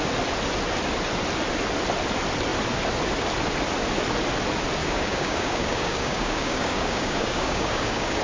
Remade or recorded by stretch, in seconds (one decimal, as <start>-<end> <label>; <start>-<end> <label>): 0.0-4.8 recorded; 4.8-8.2 remade